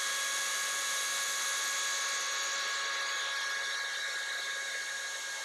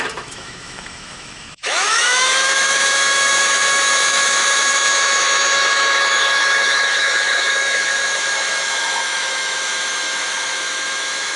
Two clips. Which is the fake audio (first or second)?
second